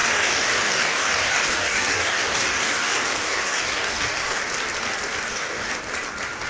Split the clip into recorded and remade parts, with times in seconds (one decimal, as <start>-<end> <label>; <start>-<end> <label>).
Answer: 0.0-4.4 remade; 4.4-5.3 recorded; 5.3-5.7 remade; 5.7-6.5 recorded